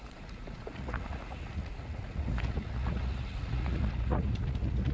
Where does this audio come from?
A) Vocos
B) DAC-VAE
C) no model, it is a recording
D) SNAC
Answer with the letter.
A